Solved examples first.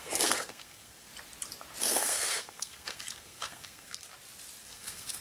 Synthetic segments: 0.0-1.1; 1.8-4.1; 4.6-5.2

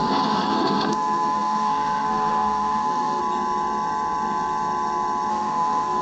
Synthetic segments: 0.0-3.2; 5.3-6.0